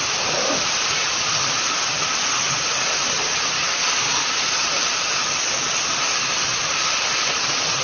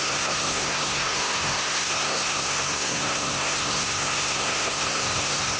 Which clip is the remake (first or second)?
second